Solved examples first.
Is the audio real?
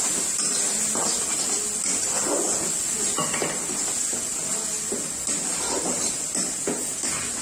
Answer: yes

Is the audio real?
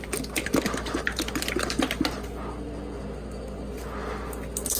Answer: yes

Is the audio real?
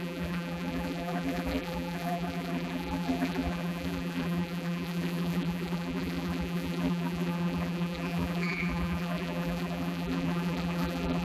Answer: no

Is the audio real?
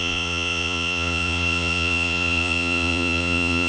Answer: no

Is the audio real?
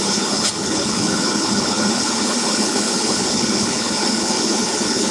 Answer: no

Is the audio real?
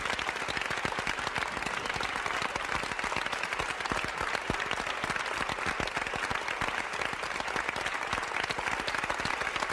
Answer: yes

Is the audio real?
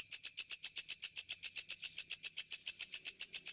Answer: yes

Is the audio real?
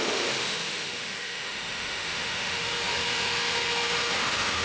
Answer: no